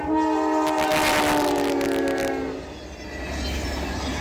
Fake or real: real